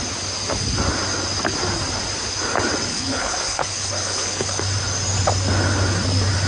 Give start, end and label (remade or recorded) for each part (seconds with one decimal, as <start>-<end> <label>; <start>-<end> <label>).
0.0-2.9 recorded; 2.9-4.6 remade; 4.6-6.5 recorded

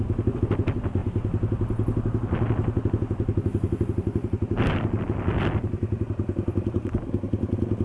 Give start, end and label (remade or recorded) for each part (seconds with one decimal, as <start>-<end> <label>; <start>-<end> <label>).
0.0-7.8 recorded

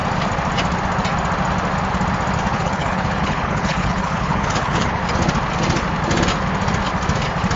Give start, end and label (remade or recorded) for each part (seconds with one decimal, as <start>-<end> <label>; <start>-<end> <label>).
0.0-2.5 recorded; 2.5-5.0 remade; 5.0-7.6 recorded

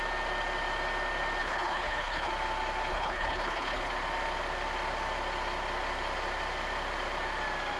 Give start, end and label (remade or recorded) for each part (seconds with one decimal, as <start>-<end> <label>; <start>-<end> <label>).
0.0-1.4 recorded; 1.4-2.3 remade; 2.3-2.9 recorded; 2.9-3.9 remade; 3.9-7.8 recorded

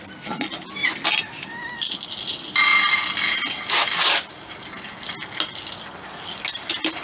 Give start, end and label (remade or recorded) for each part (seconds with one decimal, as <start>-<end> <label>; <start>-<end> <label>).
0.0-7.0 recorded

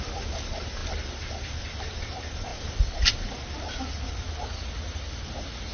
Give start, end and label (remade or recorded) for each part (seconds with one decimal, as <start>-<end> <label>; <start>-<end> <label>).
0.0-5.7 recorded